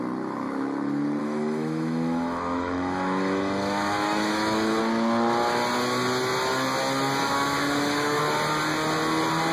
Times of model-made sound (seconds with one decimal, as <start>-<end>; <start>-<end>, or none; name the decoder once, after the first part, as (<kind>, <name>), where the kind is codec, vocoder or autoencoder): 1.2-4.8 (autoencoder, DAC-VAE); 7.2-8.2